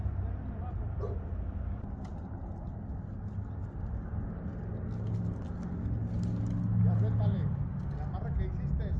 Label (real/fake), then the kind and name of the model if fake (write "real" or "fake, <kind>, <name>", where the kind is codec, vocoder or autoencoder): real